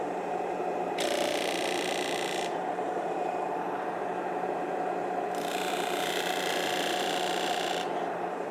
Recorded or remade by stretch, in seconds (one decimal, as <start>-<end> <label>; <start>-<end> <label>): 0.0-8.5 remade